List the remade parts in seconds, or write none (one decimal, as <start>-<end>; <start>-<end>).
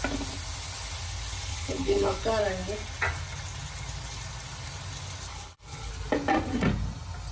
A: 1.5-2.2; 5.3-5.9